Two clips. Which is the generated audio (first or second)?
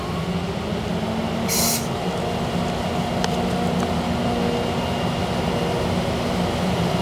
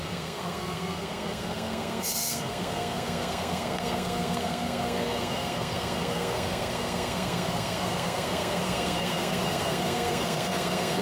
second